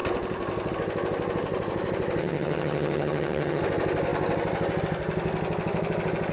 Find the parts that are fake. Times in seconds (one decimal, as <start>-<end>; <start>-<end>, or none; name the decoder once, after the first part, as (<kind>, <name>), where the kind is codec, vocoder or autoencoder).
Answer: 2.2-3.6 (vocoder, HiFi-GAN)